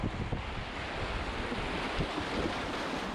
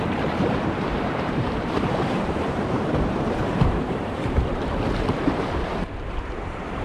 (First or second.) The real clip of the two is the first